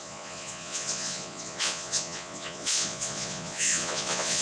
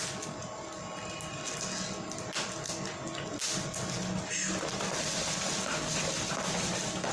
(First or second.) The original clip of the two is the second